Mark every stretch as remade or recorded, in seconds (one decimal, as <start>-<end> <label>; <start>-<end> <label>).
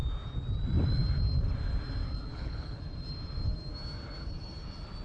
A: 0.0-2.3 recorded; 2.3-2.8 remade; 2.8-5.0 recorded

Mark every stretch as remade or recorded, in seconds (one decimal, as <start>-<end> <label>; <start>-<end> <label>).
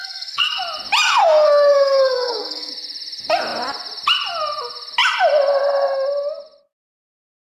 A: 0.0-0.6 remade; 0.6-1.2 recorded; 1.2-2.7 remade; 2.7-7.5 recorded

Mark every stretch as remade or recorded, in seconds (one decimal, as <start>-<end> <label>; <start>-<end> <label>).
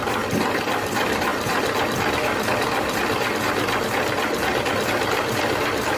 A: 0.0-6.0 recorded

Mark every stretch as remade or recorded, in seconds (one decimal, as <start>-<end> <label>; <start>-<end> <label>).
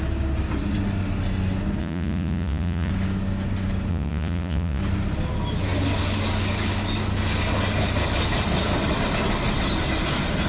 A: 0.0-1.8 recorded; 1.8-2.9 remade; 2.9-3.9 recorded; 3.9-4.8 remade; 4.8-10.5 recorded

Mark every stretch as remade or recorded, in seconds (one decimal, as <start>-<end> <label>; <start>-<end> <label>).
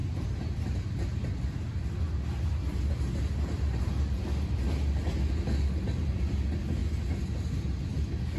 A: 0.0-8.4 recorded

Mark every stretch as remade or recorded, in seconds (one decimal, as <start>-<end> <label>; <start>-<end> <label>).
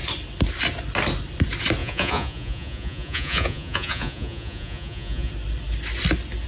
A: 0.0-1.8 recorded; 1.8-5.3 remade; 5.3-6.5 recorded